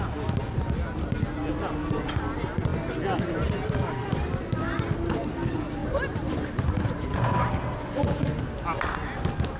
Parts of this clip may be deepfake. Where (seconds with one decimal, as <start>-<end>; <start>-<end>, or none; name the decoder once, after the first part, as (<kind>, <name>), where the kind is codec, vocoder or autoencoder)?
5.8-7.1 (vocoder, BigVGAN v2)